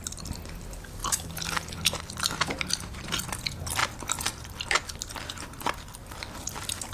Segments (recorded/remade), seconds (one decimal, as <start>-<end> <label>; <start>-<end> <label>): 0.0-3.8 recorded; 3.8-6.4 remade; 6.4-6.9 recorded